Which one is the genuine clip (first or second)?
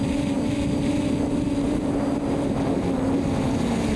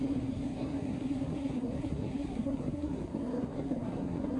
first